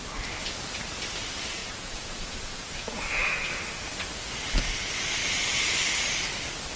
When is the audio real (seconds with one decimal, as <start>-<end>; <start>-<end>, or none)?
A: 0.0-1.6; 3.5-6.8